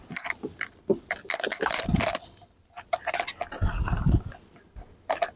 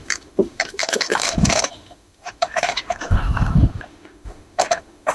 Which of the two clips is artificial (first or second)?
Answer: second